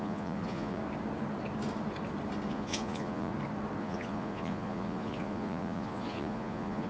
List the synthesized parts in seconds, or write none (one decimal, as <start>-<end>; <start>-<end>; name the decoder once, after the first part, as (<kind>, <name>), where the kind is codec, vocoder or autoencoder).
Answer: 0.0-0.8 (vocoder, Vocos); 2.5-3.3; 3.8-6.9